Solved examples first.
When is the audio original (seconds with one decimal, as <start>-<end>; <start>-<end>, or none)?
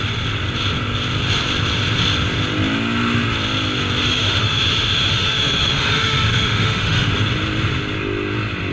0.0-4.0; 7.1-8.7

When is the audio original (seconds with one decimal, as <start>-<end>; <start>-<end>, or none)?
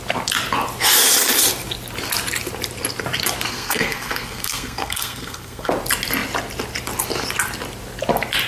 0.0-3.5; 5.7-8.5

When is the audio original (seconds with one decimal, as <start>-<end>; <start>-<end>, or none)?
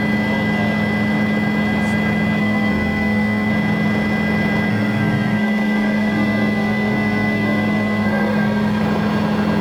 0.0-2.4; 3.5-4.7; 8.8-9.6